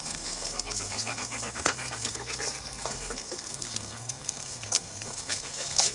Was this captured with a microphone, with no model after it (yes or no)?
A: no